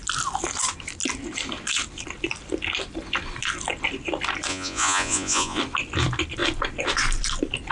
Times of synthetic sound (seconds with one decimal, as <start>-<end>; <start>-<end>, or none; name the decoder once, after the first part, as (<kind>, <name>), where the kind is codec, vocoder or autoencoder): 4.5-5.6 (vocoder, Vocos)